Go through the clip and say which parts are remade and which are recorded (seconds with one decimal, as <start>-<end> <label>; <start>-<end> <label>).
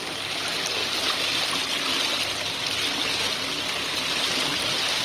0.0-0.8 recorded; 0.8-1.7 remade; 1.7-5.0 recorded